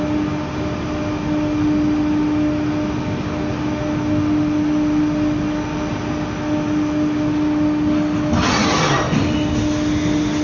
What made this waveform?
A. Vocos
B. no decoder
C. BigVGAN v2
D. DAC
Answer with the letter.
B